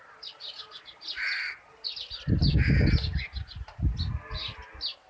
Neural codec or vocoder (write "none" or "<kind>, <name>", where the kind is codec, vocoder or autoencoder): none